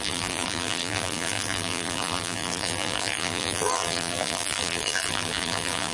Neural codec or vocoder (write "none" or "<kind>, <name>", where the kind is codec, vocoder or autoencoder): vocoder, BigVGAN v2